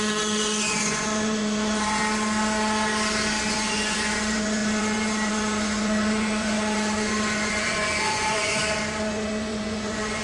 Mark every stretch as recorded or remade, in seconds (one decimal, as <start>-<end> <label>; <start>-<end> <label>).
0.0-2.0 remade; 2.0-3.5 recorded; 3.5-8.6 remade; 8.6-9.1 recorded; 9.1-10.2 remade